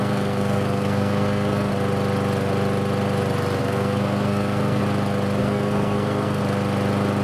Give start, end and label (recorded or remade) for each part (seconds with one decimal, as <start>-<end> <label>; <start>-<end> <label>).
0.0-1.7 remade; 1.7-3.6 recorded; 3.6-4.8 remade; 4.8-5.4 recorded; 5.4-6.4 remade; 6.4-7.2 recorded